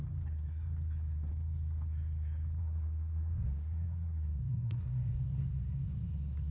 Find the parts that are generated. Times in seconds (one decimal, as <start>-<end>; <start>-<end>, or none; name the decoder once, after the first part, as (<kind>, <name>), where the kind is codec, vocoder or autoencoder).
2.6-6.5 (codec, SNAC)